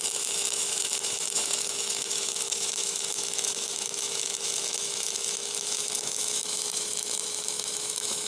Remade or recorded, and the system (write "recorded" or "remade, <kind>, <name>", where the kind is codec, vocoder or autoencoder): remade, autoencoder, DAC-VAE